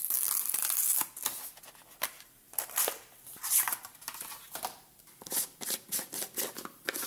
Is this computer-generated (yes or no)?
no